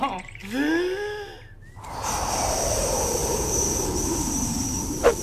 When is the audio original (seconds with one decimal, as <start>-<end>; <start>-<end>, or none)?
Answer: 0.4-2.0